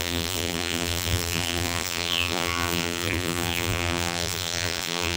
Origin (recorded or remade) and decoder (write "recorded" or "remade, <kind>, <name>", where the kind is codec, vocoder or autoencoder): remade, vocoder, BigVGAN v2